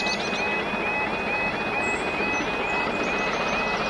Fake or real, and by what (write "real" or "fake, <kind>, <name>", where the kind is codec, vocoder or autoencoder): real